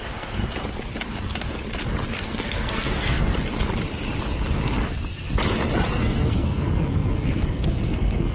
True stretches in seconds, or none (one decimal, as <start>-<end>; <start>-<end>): 0.4-2.2; 3.3-5.9